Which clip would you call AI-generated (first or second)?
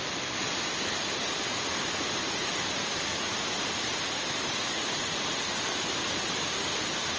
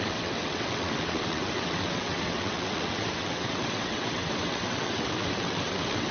second